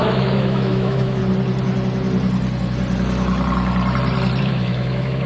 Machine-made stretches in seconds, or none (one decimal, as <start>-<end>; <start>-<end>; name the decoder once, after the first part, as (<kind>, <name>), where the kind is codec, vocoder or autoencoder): 0.0-1.2 (autoencoder, DAC-VAE); 4.4-5.3